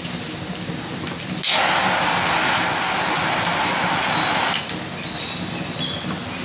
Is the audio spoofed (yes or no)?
no